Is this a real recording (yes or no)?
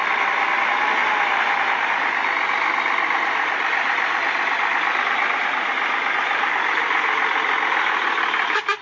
yes